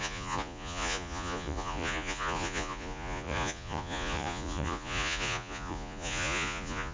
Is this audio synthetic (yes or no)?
yes